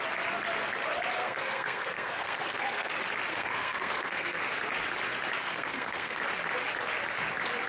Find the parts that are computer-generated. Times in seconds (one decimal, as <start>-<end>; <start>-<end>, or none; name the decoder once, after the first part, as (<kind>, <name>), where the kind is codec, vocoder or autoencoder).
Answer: 1.2-2.9 (codec, SNAC); 3.3-4.4; 5.4-6.2